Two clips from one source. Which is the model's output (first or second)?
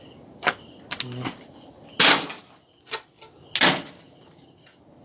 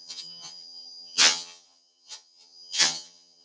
second